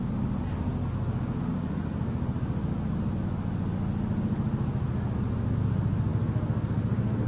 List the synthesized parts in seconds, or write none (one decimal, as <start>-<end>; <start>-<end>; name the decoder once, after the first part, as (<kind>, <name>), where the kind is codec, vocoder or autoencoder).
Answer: none